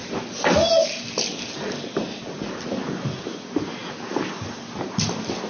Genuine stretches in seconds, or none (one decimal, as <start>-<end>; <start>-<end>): 0.0-5.5